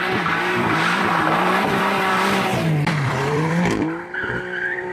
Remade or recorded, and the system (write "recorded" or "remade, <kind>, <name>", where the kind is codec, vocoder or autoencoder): remade, vocoder, BigVGAN v2